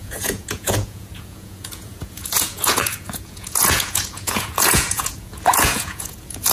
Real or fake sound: fake